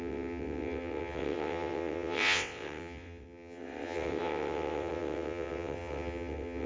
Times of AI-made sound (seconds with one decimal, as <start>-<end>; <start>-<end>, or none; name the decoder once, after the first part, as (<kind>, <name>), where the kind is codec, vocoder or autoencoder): 0.0-6.7 (vocoder, WaveNeXt)